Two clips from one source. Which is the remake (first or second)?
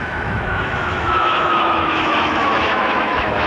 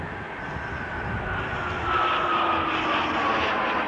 first